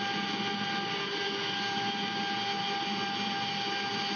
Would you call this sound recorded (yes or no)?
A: yes